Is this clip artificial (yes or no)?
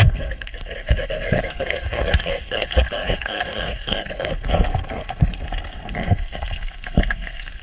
yes